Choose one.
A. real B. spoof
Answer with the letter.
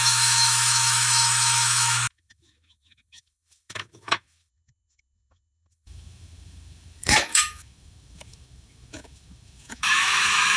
B